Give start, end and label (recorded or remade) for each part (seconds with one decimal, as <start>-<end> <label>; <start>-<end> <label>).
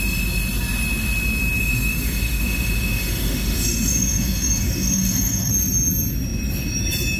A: 0.0-1.6 recorded; 1.6-5.5 remade; 5.5-7.2 recorded